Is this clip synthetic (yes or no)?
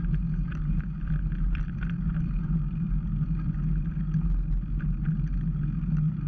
no